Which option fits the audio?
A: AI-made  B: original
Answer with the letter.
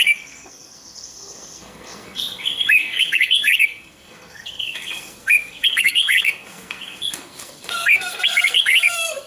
A